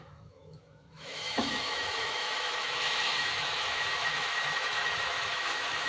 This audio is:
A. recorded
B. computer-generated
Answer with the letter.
B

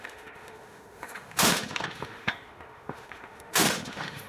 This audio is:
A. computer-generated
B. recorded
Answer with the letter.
A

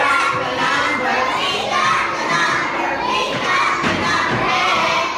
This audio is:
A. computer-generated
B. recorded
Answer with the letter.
B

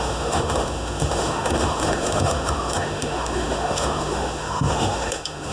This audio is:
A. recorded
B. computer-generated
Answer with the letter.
B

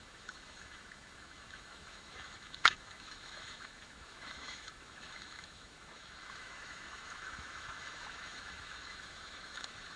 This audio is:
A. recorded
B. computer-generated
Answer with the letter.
B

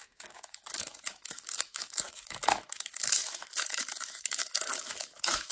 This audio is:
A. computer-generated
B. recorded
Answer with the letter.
A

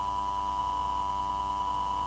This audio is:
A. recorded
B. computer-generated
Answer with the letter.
A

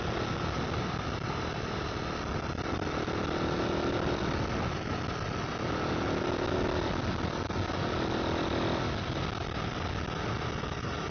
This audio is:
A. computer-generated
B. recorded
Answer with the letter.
B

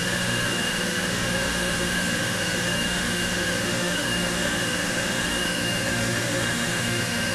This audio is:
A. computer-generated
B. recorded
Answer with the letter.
A